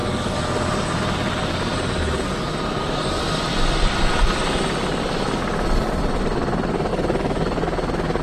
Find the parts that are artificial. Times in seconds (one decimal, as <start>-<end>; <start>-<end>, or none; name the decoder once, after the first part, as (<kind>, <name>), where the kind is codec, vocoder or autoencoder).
none